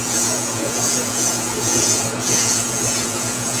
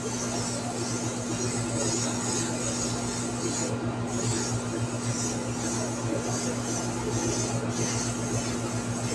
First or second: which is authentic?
second